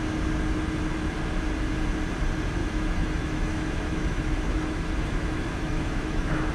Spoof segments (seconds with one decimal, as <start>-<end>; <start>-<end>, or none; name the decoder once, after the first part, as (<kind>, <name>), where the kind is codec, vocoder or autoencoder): 2.6-6.5 (autoencoder, DAC-VAE)